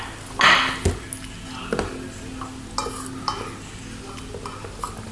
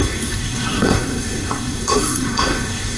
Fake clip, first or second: second